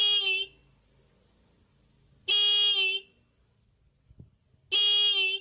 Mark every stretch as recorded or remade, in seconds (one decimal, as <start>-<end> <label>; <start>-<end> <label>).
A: 0.0-5.4 recorded